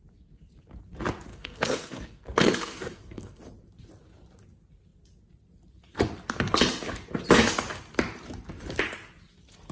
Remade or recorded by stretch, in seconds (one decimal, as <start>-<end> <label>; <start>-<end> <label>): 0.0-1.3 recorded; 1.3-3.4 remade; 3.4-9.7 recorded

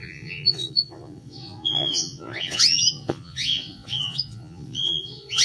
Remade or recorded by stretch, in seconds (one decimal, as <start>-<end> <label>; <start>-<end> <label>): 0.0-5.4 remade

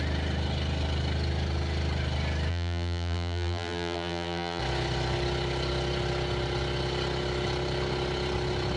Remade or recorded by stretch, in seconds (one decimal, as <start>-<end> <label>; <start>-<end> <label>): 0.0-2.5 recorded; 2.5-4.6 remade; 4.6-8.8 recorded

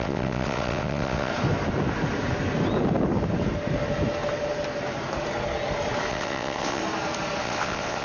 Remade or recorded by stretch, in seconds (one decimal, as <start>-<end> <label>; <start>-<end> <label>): 0.0-1.3 remade; 1.3-6.1 recorded; 6.1-6.8 remade; 6.8-7.4 recorded; 7.4-8.0 remade